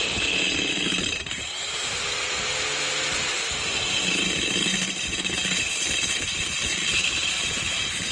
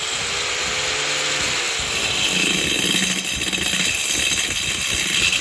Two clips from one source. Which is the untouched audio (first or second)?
second